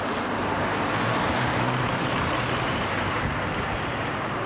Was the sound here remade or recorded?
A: remade